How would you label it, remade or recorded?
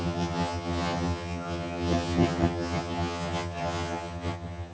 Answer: remade